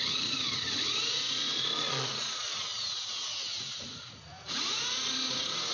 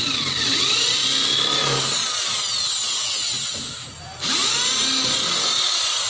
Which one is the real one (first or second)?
second